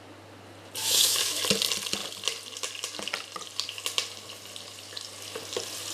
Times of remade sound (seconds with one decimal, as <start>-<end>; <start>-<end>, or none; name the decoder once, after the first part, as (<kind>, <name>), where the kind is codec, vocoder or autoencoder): 0.8-1.4 (autoencoder, DAC-VAE)